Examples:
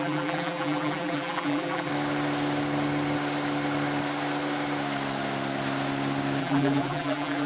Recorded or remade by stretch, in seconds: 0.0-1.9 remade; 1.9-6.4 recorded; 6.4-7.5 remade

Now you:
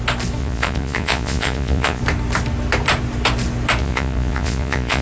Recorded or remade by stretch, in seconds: 0.0-0.4 recorded; 0.4-2.0 remade; 2.0-3.8 recorded; 3.8-5.0 remade

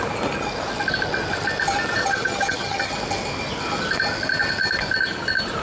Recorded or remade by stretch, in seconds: 0.0-2.0 recorded; 2.0-2.9 remade; 2.9-5.6 recorded